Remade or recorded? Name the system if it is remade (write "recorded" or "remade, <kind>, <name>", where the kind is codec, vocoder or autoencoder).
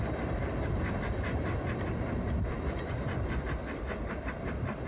remade, vocoder, BigVGAN v2